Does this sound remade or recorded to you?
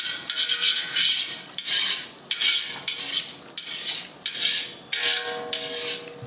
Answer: recorded